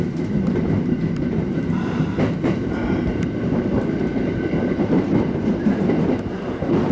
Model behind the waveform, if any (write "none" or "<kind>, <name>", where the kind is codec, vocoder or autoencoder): vocoder, BigVGAN v2